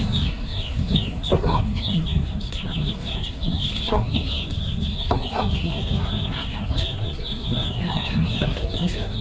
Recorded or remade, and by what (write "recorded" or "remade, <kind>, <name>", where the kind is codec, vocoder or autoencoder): remade, codec, SNAC